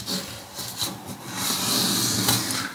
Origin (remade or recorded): recorded